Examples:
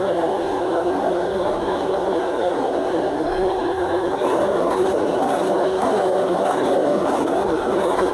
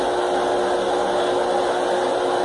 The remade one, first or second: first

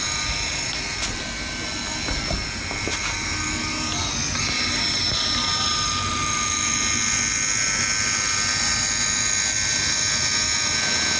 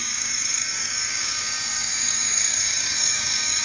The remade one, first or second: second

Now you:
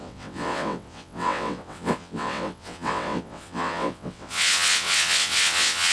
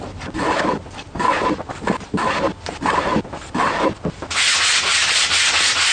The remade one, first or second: first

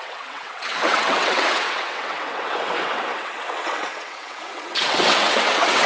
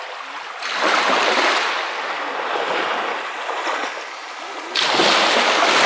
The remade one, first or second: first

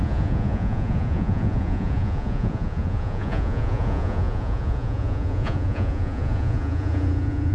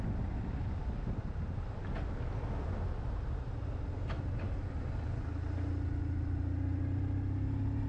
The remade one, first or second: first